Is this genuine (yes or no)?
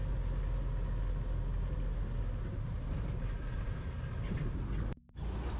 yes